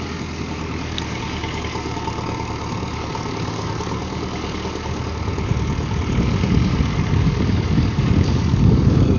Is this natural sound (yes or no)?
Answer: no